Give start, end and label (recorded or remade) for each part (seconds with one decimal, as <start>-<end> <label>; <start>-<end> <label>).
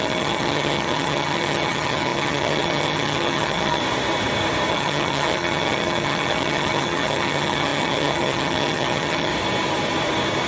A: 0.0-3.8 remade; 3.8-4.7 recorded; 4.7-9.3 remade; 9.3-10.5 recorded